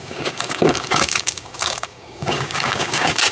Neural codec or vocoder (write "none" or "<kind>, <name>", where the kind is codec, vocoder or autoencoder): codec, DAC